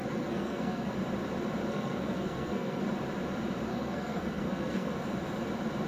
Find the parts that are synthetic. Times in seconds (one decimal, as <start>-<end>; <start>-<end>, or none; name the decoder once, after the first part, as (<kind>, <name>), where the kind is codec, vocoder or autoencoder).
0.0-0.9 (codec, SNAC); 1.7-2.8; 3.7-4.9

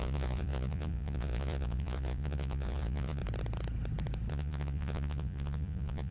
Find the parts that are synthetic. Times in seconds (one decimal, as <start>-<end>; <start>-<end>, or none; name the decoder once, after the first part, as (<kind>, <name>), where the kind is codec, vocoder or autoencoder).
0.0-3.2 (vocoder, Vocos); 4.3-6.1

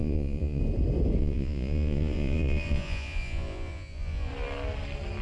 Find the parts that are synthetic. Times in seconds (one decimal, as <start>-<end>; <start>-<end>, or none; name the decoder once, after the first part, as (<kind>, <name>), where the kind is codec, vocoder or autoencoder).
0.0-0.6 (vocoder, Vocos); 1.2-4.3

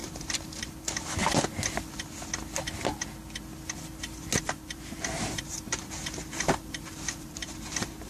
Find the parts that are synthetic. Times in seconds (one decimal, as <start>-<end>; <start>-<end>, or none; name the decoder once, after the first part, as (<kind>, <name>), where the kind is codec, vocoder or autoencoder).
0.0-1.2 (vocoder, BigVGAN v2); 4.4-8.1